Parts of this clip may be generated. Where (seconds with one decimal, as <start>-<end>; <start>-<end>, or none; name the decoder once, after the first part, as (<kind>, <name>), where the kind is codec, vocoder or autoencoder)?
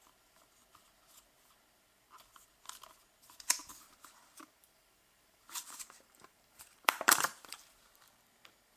3.6-7.8 (vocoder, BigVGAN v2)